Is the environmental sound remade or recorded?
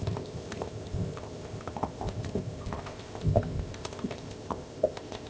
remade